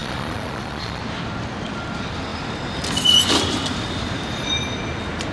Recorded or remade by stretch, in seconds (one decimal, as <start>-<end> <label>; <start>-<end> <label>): 0.0-1.0 remade; 1.0-5.3 recorded